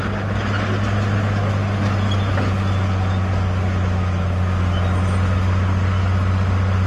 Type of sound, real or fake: real